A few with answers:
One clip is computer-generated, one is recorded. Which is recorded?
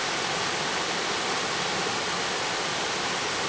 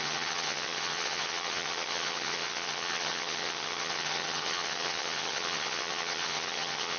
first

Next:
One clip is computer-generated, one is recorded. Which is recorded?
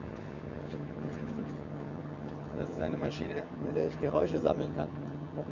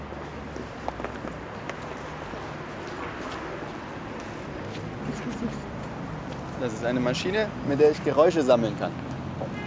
second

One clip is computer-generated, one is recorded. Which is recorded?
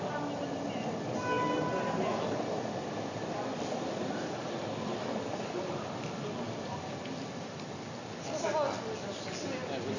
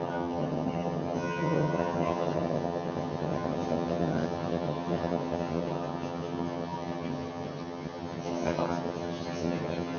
first